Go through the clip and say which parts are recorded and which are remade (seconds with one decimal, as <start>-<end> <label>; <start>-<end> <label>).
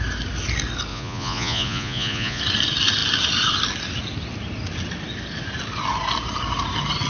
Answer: 0.0-0.9 recorded; 0.9-2.4 remade; 2.4-7.1 recorded